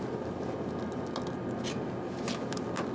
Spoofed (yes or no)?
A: no